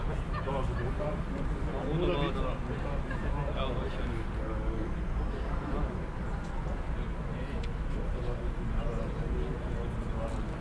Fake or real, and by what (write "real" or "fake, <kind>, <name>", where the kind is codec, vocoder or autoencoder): real